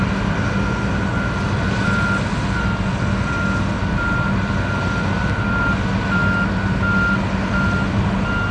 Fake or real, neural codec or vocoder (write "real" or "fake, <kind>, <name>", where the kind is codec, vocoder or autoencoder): real